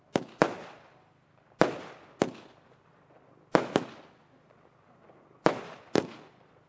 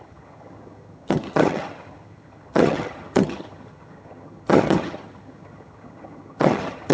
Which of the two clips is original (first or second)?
first